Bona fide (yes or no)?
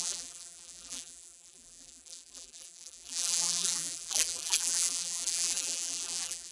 no